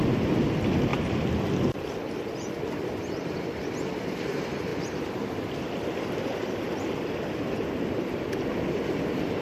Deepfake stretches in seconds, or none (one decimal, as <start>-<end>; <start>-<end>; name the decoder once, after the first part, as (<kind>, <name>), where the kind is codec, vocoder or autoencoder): 0.9-1.4 (vocoder, BigVGAN v2); 4.7-7.3